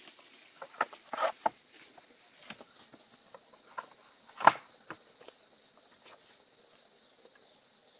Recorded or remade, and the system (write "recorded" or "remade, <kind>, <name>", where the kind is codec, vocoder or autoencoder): recorded